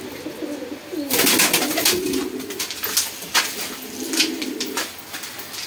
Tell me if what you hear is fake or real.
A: real